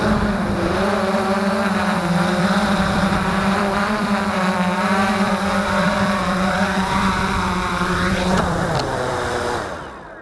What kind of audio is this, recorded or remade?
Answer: remade